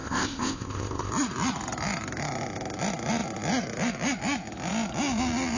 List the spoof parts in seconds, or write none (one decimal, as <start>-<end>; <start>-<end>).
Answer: 0.0-1.1